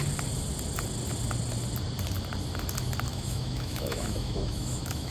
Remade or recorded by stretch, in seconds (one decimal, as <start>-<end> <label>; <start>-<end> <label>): 0.0-3.1 recorded; 3.1-5.1 remade